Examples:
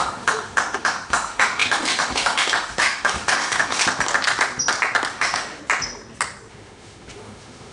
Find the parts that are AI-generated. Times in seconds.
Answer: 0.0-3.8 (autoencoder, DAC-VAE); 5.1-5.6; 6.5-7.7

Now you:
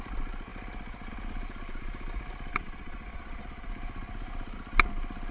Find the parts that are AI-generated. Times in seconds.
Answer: 2.5-3.7 (vocoder, Vocos)

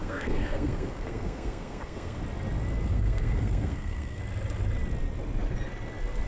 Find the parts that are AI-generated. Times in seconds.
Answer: 0.0-2.2 (codec, SNAC); 2.9-4.2

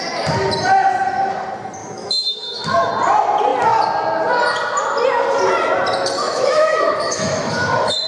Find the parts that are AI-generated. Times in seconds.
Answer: 1.8-2.9 (autoencoder, DAC-VAE); 6.2-8.1